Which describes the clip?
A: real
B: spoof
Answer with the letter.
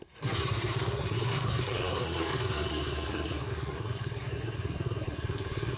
B